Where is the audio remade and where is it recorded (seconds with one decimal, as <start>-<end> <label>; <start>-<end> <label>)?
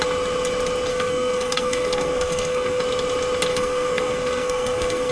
0.0-0.9 recorded; 0.9-2.8 remade; 2.8-3.5 recorded; 3.5-5.1 remade